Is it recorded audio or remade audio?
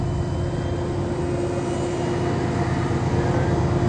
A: recorded